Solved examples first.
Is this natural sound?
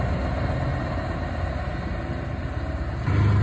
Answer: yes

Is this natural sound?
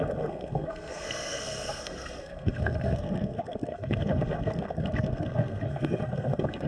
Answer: no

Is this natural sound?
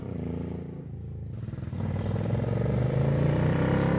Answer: yes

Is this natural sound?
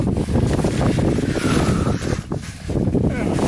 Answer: yes